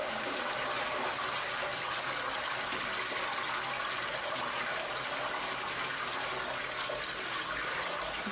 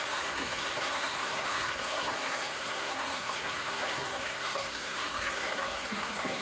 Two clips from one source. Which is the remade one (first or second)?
second